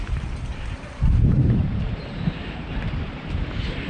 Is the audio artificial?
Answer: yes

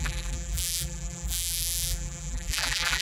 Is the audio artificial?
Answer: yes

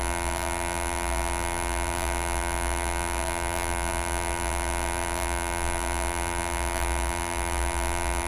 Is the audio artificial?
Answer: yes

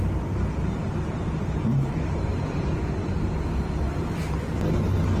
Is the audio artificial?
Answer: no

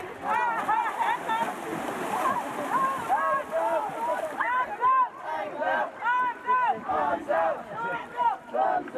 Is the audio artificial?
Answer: no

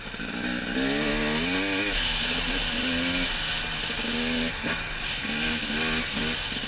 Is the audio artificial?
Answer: no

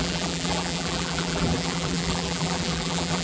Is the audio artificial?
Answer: yes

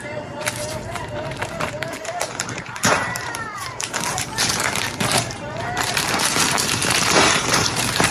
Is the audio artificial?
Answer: yes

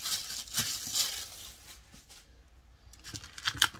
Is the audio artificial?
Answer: no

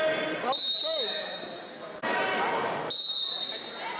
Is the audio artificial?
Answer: no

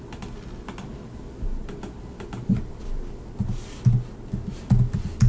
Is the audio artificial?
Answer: no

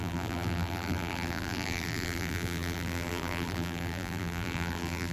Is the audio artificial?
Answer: yes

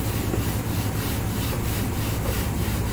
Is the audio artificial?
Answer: yes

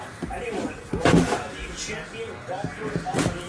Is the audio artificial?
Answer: no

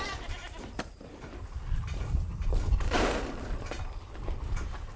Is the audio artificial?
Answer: yes